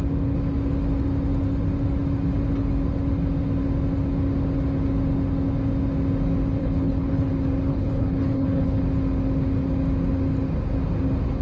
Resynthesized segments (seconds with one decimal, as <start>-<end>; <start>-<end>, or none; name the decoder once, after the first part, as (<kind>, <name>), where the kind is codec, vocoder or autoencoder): 6.6-7.3 (codec, HILCodec); 7.7-8.8